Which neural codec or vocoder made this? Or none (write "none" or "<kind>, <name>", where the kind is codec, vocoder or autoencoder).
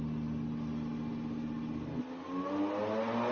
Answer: none